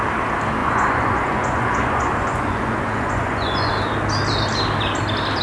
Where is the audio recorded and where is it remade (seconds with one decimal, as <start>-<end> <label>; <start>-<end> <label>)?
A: 0.0-0.6 recorded; 0.6-3.7 remade; 3.7-5.4 recorded